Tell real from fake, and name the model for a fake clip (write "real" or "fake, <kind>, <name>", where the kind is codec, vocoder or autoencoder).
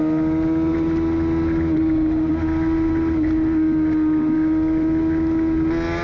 real